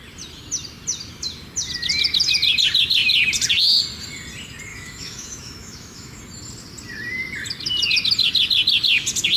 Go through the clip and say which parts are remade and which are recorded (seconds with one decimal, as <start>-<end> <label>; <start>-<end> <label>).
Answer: 0.0-4.7 recorded; 4.7-6.2 remade; 6.2-9.4 recorded